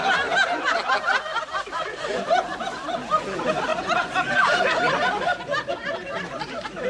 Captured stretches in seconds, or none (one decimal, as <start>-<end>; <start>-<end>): 0.0-6.9